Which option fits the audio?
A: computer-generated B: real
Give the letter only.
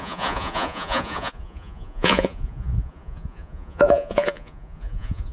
A